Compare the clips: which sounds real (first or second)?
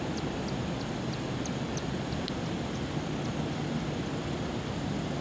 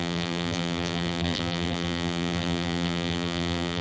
first